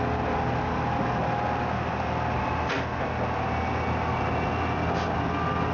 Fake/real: real